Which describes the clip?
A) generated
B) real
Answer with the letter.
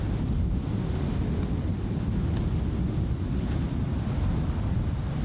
B